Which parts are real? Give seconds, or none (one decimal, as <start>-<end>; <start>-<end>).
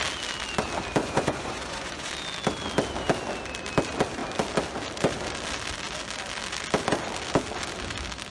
0.0-1.0; 2.1-8.3